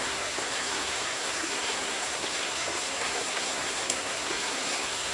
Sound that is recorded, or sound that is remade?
remade